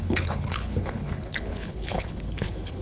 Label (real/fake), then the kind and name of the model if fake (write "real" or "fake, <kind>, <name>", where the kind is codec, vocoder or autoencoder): fake, codec, HILCodec